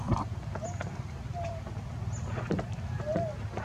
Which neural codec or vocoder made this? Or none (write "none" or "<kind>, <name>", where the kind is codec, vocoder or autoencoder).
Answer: none